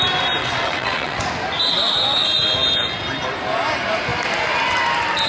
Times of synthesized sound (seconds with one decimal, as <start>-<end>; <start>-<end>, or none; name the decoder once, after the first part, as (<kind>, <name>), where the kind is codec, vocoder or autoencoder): 0.4-1.2 (vocoder, WaveNeXt)